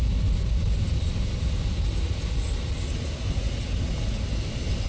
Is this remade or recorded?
recorded